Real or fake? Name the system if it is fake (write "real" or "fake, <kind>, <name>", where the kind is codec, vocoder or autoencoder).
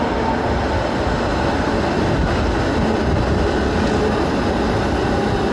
real